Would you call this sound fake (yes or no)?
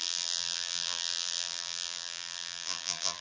yes